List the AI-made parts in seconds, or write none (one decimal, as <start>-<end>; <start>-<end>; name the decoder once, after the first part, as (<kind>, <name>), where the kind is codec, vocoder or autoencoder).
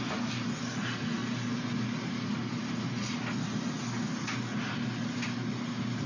none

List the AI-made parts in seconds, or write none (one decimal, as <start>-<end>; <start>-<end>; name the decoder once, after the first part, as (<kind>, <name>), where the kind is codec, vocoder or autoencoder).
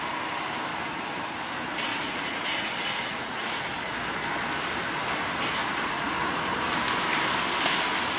1.9-2.7 (vocoder, Vocos); 3.1-3.6; 5.6-6.5